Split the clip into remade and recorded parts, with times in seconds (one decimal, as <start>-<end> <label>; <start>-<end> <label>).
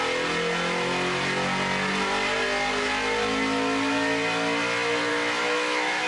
0.0-5.1 recorded; 5.1-6.1 remade